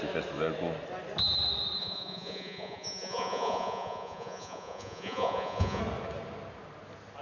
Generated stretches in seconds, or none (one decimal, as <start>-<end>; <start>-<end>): 1.8-5.8